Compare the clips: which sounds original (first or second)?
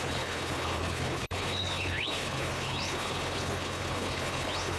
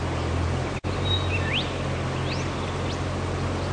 second